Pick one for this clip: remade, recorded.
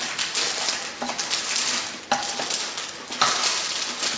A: recorded